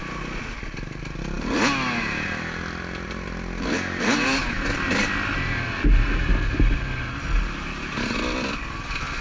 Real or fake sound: real